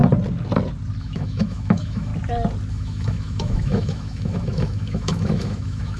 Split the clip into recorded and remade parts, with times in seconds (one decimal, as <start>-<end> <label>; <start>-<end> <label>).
0.0-1.0 recorded; 1.0-2.1 remade; 2.1-2.7 recorded; 2.7-6.0 remade